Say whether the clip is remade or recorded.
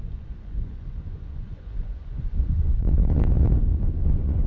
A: remade